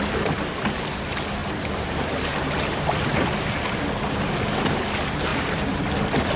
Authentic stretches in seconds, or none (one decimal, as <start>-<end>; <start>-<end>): 0.0-1.4; 2.1-5.3; 5.9-6.4